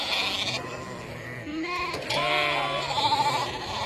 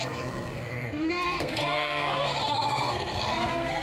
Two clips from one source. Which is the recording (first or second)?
first